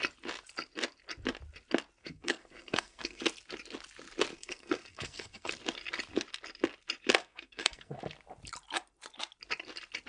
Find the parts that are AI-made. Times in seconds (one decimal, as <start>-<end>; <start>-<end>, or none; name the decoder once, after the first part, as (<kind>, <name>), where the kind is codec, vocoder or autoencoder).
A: 2.0-3.2 (codec, SNAC); 4.3-5.5; 7.2-8.0